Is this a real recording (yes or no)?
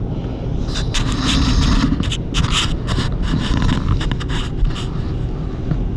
yes